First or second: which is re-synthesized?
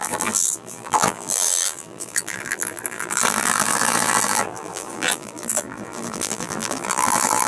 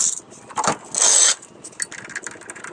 first